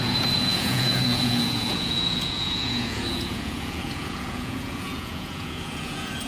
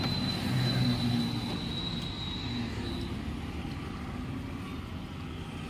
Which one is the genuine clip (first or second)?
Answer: second